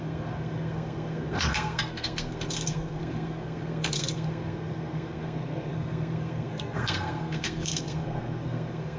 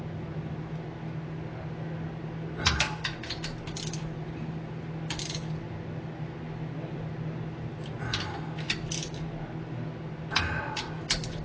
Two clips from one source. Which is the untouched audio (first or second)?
second